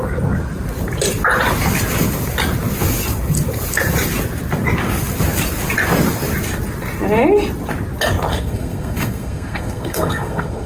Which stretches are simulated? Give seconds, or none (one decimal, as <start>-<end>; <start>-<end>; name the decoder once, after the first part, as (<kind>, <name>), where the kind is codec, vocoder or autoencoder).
8.3-10.7 (codec, SNAC)